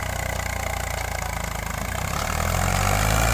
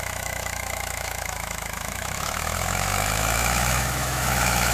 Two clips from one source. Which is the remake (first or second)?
second